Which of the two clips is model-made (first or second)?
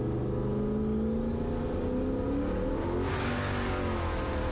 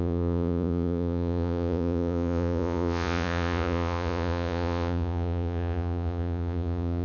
second